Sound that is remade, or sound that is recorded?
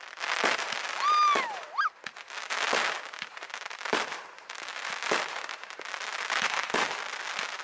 recorded